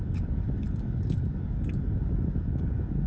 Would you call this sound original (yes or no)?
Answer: no